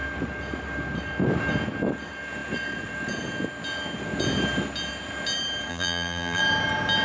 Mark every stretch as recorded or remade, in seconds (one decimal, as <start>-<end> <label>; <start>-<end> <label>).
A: 0.0-5.7 recorded; 5.7-6.4 remade; 6.4-7.0 recorded